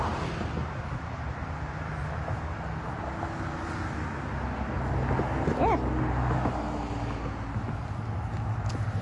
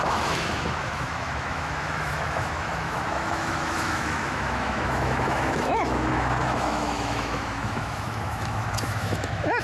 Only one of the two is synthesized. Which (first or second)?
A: second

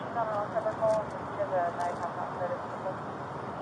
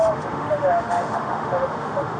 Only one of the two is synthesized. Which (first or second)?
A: second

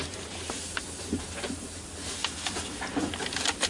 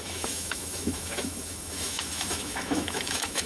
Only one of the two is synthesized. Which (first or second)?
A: second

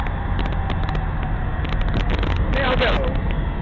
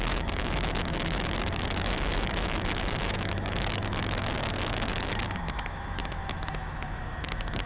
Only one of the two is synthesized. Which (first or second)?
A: second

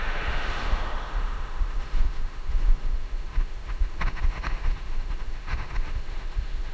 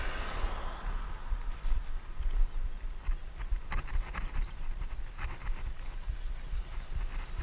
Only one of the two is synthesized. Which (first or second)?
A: first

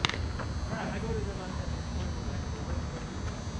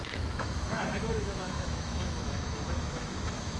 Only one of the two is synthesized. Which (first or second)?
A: second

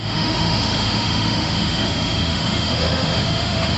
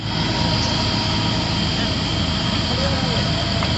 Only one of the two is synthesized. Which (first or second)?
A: first